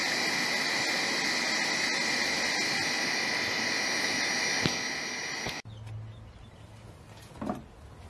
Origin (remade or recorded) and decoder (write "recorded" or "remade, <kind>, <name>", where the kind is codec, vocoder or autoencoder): recorded